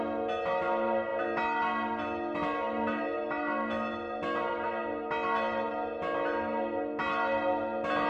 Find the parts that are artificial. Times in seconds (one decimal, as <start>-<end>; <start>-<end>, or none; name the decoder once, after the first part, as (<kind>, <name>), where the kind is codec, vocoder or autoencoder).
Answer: none